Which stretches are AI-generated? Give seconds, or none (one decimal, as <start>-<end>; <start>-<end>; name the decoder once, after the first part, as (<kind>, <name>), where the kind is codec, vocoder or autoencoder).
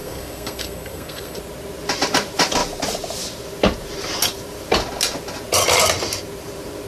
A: 0.0-1.4 (codec, SNAC)